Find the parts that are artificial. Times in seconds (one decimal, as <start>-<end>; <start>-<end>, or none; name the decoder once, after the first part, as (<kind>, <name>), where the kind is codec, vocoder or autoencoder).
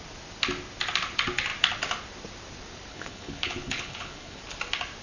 2.9-4.4 (codec, HILCodec)